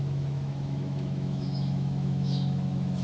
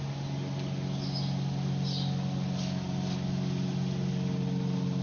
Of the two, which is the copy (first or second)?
first